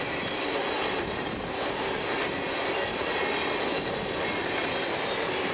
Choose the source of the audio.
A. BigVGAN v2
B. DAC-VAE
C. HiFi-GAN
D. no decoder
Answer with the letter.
D